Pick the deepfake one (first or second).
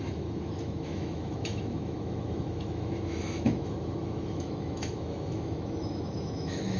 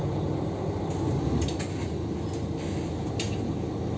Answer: first